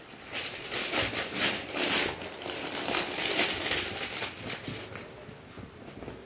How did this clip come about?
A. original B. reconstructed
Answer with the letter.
A